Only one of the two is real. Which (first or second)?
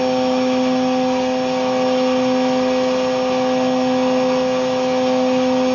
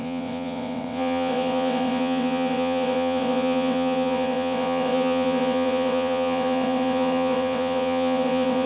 first